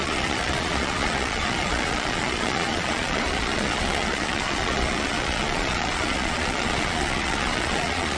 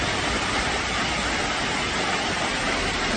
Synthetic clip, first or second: first